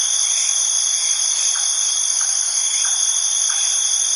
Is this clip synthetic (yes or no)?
no